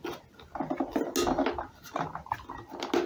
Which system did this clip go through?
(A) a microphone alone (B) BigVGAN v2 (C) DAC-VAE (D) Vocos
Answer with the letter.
A